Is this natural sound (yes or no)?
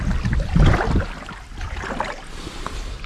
yes